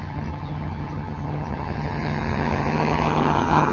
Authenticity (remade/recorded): remade